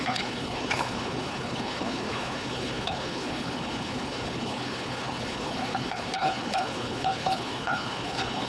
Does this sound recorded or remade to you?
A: remade